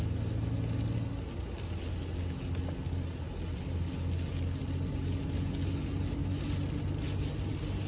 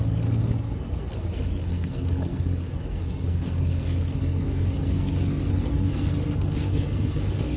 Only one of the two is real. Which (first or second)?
first